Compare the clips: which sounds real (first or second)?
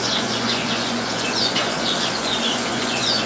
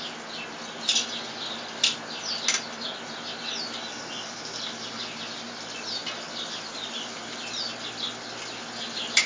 second